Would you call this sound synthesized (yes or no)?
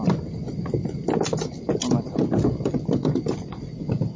yes